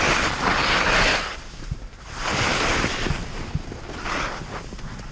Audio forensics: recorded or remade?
recorded